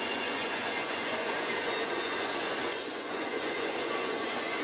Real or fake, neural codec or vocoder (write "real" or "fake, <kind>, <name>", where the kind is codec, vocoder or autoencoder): fake, vocoder, Vocos